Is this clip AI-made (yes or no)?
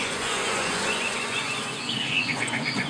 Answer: yes